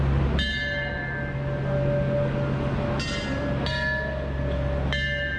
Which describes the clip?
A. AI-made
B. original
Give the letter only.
B